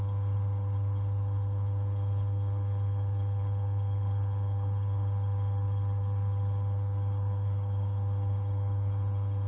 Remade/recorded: remade